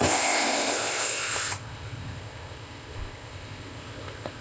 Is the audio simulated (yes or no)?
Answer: yes